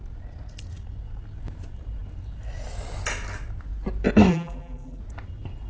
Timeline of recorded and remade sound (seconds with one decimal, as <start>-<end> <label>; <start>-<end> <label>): 0.0-4.3 recorded; 4.3-5.0 remade; 5.0-5.7 recorded